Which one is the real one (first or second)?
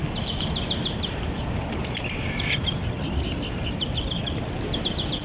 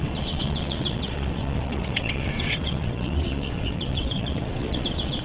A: first